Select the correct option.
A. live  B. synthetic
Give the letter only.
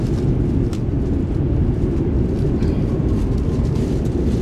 B